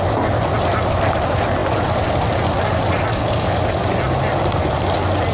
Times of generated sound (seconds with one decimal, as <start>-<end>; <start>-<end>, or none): 3.1-3.7